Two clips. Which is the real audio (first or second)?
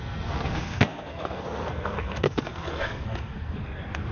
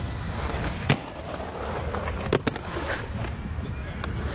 second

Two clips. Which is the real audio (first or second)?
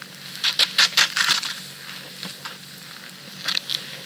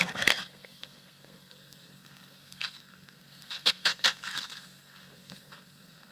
first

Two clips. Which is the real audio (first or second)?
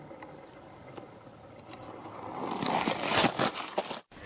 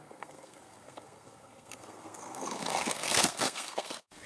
first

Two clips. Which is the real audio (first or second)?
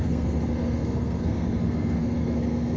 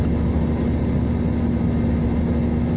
second